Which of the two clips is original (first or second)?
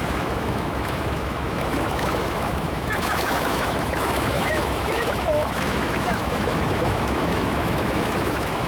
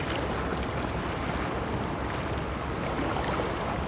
second